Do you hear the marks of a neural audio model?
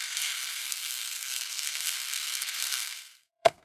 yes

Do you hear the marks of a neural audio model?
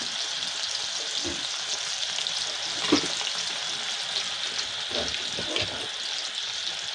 no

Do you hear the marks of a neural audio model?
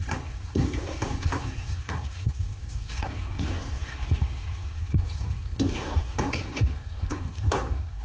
yes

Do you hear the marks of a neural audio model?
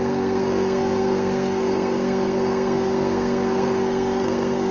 yes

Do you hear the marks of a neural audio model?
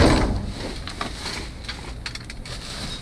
no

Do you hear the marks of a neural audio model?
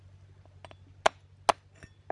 no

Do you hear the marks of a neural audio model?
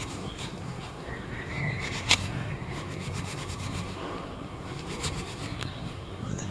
yes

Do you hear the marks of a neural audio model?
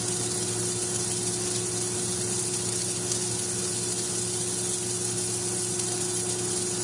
no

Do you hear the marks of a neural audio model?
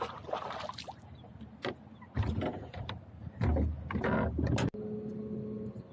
no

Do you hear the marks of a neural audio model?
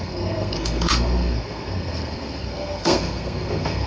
yes